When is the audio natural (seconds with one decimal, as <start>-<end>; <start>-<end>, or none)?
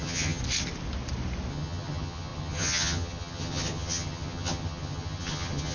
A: 0.4-1.5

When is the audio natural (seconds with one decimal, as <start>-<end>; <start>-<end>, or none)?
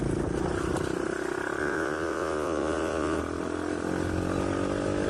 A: 0.0-1.6; 3.2-5.1